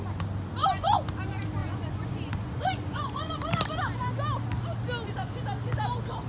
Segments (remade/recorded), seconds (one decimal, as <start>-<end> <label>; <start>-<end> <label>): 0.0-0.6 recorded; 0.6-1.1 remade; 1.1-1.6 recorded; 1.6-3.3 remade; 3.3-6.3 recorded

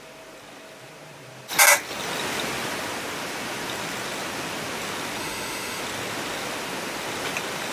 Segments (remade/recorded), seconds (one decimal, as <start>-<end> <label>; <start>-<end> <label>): 0.0-5.2 recorded; 5.2-5.8 remade; 5.8-7.7 recorded

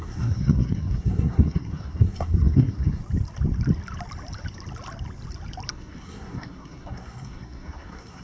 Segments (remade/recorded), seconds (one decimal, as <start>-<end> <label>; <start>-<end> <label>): 0.0-3.0 remade; 3.0-5.7 recorded; 5.7-8.2 remade

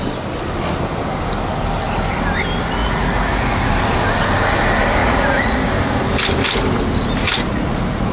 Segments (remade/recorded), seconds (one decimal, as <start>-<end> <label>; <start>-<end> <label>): 0.0-2.8 recorded; 2.8-3.7 remade; 3.7-5.0 recorded; 5.0-5.7 remade; 5.7-7.5 recorded; 7.5-8.1 remade

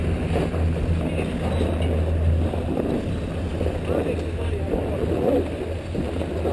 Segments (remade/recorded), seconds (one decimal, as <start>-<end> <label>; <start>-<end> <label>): 0.0-6.5 recorded